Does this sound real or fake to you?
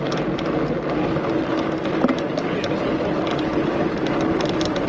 real